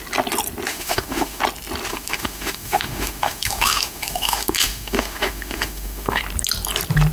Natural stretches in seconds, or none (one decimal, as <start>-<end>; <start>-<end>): 0.0-0.7; 1.4-1.9; 6.2-7.1

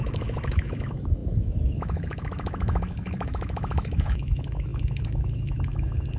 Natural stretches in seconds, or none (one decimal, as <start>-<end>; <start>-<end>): none

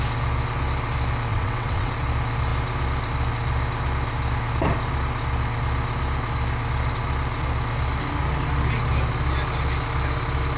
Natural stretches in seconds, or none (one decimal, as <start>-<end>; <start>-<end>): 0.0-1.3; 1.9-10.6

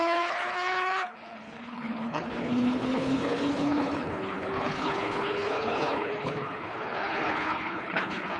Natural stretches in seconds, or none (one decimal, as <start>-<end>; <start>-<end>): none